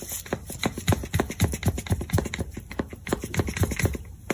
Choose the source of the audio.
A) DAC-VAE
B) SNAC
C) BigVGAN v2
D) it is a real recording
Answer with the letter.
D